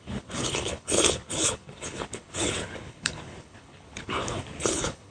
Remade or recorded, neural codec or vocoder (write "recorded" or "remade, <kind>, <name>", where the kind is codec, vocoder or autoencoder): remade, codec, HILCodec